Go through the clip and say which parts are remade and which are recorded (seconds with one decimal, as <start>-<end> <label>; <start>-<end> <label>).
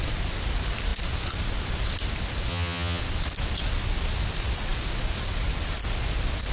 0.0-2.5 recorded; 2.5-3.0 remade; 3.0-6.5 recorded